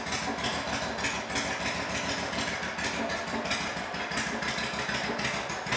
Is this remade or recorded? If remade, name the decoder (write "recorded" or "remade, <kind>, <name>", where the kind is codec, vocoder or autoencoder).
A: recorded